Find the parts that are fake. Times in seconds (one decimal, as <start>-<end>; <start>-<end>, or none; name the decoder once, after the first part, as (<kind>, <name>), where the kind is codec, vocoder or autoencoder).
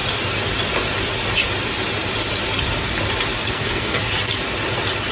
3.4-4.0 (codec, SNAC)